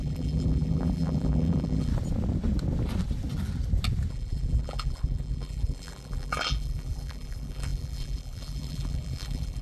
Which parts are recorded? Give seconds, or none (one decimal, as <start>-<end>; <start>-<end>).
1.9-4.1